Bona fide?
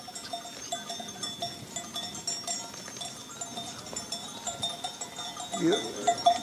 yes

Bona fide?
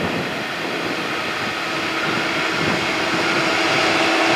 yes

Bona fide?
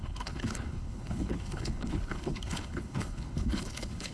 no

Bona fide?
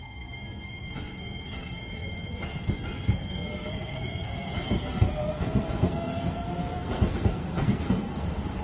no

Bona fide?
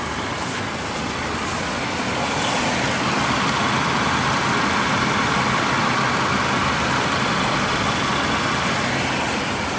yes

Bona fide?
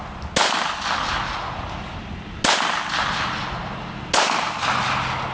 yes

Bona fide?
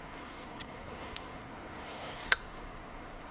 no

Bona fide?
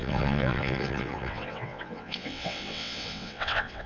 no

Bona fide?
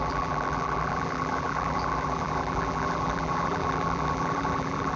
no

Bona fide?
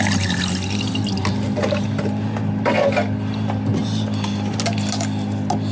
yes